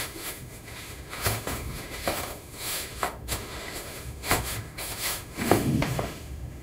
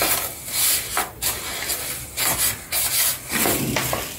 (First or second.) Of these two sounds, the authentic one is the second